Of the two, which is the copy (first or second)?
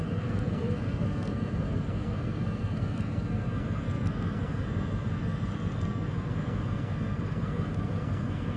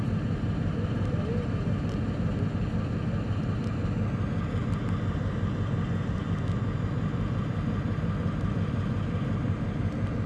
first